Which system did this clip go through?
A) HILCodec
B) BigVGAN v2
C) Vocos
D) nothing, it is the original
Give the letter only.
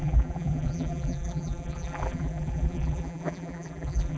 B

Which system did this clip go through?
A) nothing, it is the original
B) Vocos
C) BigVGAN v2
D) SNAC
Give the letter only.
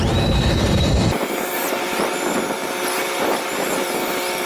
C